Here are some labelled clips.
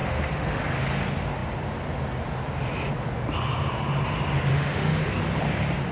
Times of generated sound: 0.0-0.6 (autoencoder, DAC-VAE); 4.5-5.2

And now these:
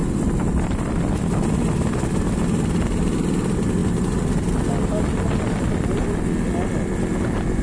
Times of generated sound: none